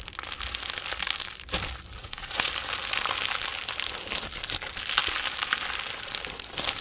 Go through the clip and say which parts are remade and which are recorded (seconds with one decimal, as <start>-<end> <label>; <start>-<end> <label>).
0.0-2.0 recorded; 2.0-2.5 remade; 2.5-6.8 recorded